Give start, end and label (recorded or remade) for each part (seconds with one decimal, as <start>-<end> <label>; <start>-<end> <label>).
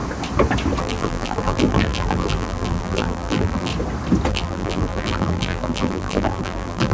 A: 0.0-0.8 recorded; 0.8-3.7 remade; 3.7-4.3 recorded; 4.3-6.9 remade